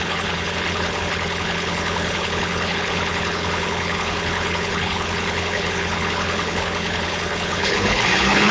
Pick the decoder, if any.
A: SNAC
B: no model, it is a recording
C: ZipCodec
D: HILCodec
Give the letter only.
D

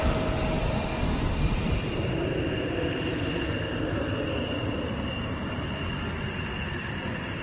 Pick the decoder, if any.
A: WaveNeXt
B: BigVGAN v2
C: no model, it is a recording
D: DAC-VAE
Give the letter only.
C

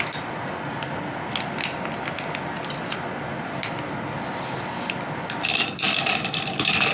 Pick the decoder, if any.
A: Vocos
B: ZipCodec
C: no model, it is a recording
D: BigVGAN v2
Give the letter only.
C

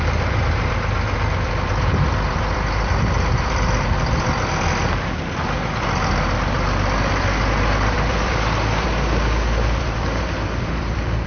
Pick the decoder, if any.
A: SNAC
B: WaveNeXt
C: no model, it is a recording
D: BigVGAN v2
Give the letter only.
D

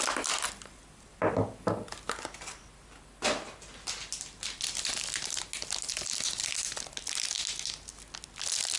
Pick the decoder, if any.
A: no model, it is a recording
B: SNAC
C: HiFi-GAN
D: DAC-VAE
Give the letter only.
A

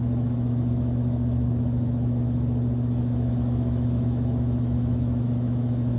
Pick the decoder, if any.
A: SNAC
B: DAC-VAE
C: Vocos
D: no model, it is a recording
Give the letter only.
B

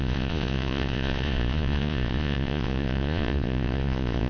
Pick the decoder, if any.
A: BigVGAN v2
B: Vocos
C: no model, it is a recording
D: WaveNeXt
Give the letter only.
B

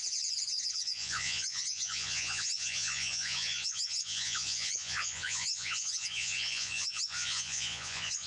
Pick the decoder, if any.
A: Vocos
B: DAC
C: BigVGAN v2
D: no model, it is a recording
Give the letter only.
A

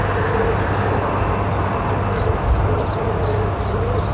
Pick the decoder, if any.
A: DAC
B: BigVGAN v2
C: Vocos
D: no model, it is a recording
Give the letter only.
D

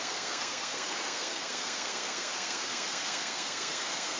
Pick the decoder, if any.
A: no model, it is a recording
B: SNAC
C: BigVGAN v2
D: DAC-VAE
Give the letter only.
B